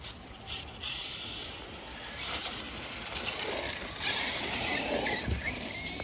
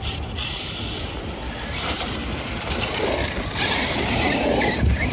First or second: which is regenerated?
second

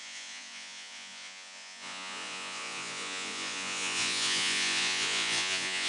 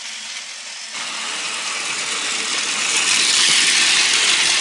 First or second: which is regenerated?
first